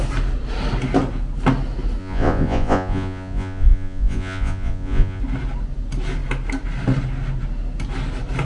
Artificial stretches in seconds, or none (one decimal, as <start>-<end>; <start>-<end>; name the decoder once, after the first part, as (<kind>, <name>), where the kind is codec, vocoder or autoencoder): 2.0-5.2 (vocoder, Vocos)